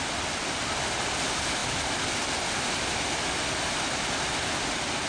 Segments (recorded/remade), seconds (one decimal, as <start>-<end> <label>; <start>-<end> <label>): 0.0-5.1 recorded